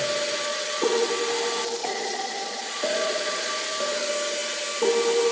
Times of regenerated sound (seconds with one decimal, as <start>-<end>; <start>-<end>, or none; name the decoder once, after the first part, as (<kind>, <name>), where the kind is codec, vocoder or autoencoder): 0.5-1.1 (vocoder, Vocos); 1.8-3.5